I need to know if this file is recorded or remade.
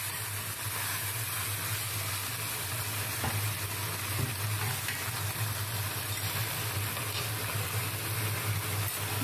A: recorded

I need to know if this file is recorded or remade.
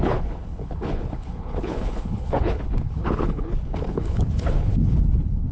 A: remade